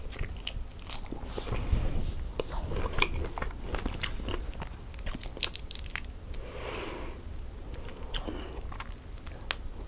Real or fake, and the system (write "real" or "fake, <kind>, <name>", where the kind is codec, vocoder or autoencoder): real